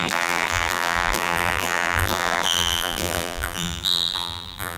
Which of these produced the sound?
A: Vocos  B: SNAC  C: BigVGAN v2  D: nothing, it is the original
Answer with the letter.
C